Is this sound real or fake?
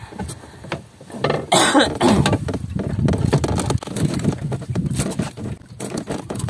real